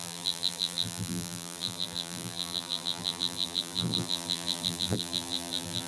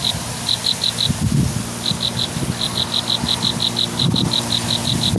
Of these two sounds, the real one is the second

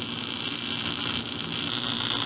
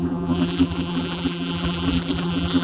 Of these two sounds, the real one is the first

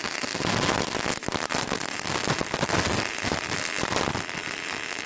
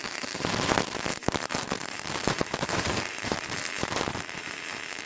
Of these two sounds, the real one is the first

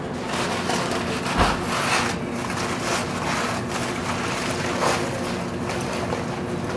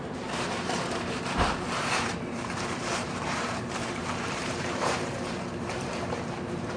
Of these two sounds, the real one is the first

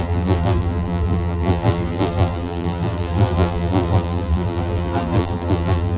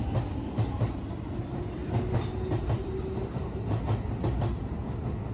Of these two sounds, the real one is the second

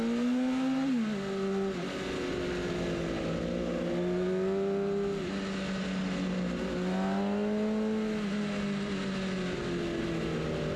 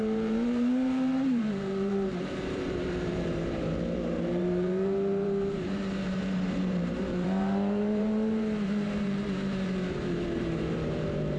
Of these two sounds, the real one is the first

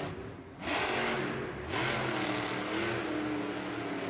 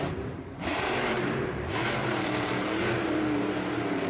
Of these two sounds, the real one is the first